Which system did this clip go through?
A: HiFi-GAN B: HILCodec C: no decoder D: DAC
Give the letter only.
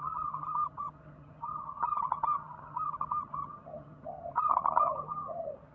A